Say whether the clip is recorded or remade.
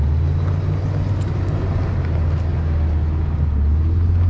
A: recorded